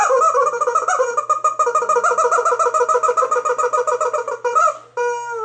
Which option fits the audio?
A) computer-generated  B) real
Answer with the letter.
B